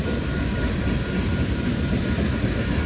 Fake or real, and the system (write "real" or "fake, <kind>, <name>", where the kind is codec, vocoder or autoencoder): real